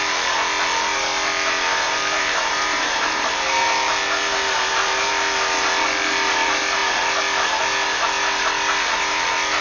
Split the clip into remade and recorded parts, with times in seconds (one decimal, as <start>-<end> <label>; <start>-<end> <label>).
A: 0.0-1.7 recorded; 1.7-5.1 remade; 5.1-9.6 recorded